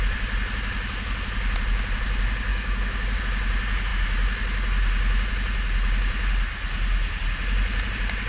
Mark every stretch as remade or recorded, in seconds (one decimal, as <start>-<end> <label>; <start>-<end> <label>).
0.0-2.5 recorded; 2.5-3.2 remade; 3.2-8.3 recorded